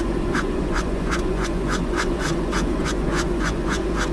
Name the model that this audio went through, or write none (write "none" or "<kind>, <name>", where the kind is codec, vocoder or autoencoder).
vocoder, Vocos